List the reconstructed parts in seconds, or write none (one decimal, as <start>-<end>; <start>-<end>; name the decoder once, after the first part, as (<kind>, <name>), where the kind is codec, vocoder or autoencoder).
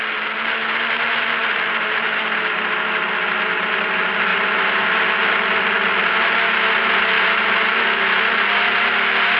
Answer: 1.4-2.2 (vocoder, BigVGAN v2); 4.3-4.8